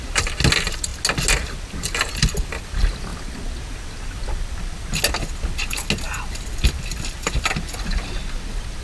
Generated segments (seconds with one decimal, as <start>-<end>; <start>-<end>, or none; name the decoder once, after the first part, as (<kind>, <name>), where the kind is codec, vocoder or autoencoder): none

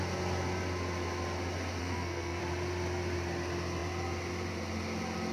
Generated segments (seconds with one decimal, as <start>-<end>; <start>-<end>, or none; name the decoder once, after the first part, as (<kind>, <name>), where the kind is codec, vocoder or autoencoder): 1.8-2.4 (codec, SNAC)

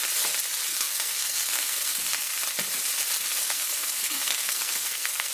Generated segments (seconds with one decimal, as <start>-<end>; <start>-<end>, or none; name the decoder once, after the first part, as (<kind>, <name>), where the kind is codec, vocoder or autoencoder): 0.7-2.3 (codec, SNAC); 3.3-5.3

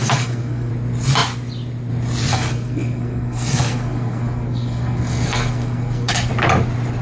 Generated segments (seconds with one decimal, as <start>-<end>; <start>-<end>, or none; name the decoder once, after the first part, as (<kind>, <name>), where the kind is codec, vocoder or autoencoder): 0.0-0.7 (codec, SNAC); 2.3-6.3

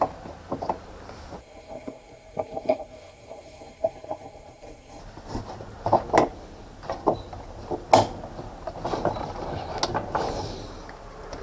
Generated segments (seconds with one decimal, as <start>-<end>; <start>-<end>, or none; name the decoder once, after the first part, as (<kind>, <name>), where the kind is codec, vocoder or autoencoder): 1.4-5.0 (codec, SNAC)